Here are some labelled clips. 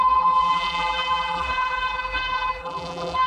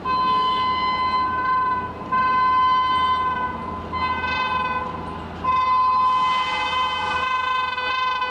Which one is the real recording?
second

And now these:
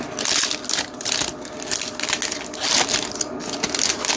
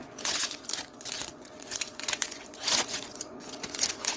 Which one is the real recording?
first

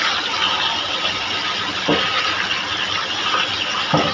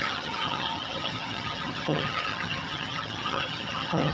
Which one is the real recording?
first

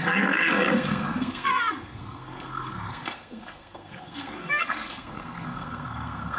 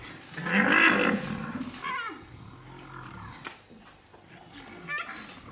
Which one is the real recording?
second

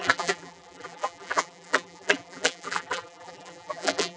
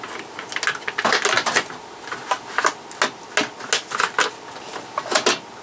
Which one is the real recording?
second